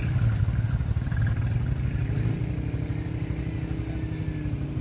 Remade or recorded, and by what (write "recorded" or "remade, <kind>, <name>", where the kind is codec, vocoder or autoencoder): recorded